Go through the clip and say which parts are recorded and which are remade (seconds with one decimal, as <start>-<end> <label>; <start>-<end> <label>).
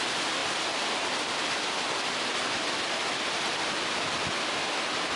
0.0-5.2 recorded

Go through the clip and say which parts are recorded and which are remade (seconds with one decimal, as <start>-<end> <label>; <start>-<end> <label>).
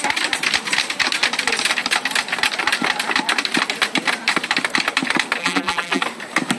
0.0-5.4 recorded; 5.4-6.0 remade; 6.0-6.6 recorded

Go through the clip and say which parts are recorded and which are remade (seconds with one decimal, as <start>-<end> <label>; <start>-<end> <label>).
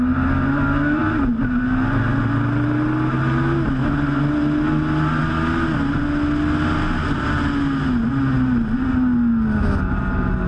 0.0-10.5 recorded